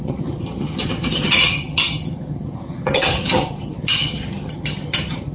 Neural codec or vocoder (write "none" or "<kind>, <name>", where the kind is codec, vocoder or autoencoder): vocoder, HiFi-GAN